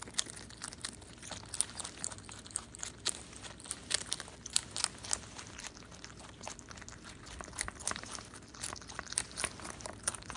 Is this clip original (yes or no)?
yes